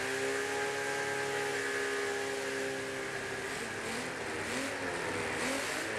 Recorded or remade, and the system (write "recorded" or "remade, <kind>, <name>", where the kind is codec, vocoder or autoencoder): recorded